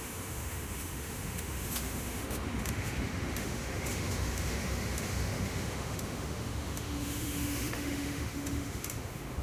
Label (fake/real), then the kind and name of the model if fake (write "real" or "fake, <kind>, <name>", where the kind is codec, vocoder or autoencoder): fake, autoencoder, DAC-VAE